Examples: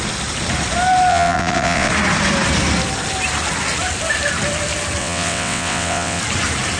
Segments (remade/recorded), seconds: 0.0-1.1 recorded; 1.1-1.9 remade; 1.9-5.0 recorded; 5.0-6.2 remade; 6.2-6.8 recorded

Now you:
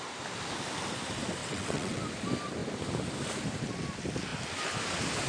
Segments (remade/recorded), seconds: 0.0-1.4 recorded; 1.4-2.0 remade; 2.0-5.3 recorded

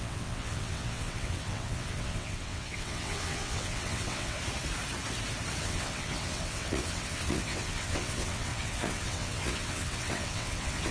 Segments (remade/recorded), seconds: 0.0-4.4 remade; 4.4-5.6 recorded; 5.6-10.9 remade

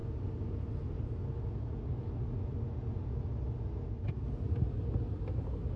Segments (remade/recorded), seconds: 0.0-5.8 recorded

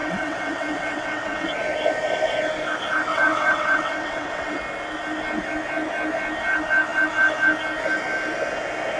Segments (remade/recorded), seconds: 0.0-1.5 remade; 1.5-3.1 recorded; 3.1-4.6 remade; 4.6-9.0 recorded

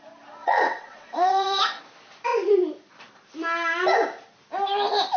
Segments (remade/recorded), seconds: 0.0-0.4 recorded; 0.4-1.8 remade; 1.8-5.2 recorded

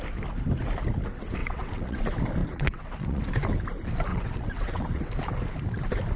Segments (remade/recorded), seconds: 0.0-1.4 recorded; 1.4-2.0 remade; 2.0-2.4 recorded; 2.4-3.2 remade; 3.2-4.1 recorded; 4.1-5.1 remade; 5.1-6.2 recorded

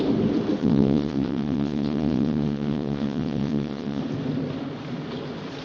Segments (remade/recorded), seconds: 0.0-0.6 recorded; 0.6-4.0 remade; 4.0-5.6 recorded